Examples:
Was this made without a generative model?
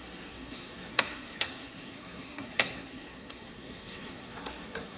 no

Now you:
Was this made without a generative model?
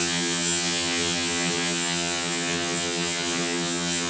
no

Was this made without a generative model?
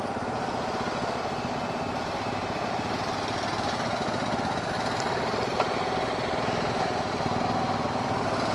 yes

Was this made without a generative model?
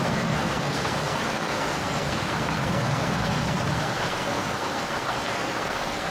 no